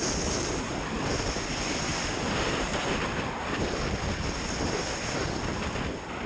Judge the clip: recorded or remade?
recorded